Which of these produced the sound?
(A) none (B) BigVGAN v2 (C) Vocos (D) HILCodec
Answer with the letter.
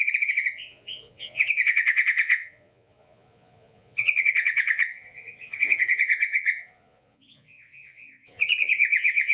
C